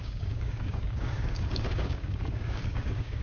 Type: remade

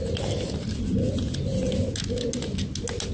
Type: recorded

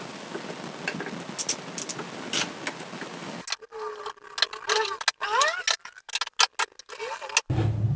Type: recorded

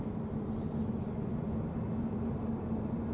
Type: recorded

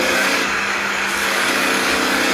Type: remade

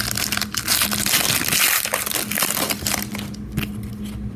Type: recorded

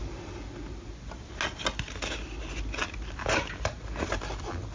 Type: recorded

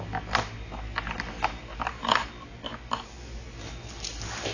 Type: recorded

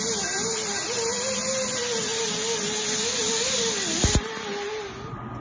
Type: recorded